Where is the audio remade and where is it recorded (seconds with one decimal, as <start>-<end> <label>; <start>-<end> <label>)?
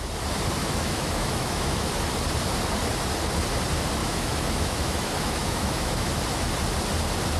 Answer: 0.0-0.6 recorded; 0.6-1.9 remade; 1.9-4.0 recorded; 4.0-6.1 remade; 6.1-7.4 recorded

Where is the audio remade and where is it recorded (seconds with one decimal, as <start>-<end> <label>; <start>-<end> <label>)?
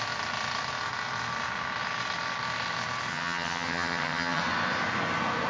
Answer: 0.0-3.1 recorded; 3.1-4.4 remade; 4.4-5.5 recorded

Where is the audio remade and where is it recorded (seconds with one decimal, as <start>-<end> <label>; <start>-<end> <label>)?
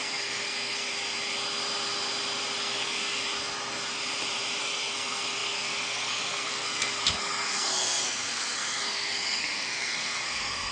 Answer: 0.0-0.9 remade; 0.9-2.6 recorded; 2.6-3.2 remade; 3.2-4.6 recorded; 4.6-10.7 remade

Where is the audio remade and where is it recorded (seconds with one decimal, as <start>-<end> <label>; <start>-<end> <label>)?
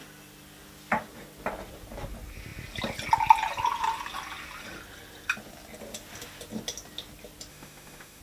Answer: 0.0-7.5 recorded; 7.5-8.2 remade